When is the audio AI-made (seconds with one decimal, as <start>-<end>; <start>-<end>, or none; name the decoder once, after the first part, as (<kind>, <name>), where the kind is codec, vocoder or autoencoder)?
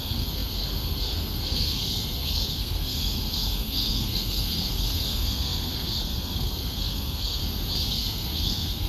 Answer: 0.0-7.4 (codec, SNAC); 7.9-8.9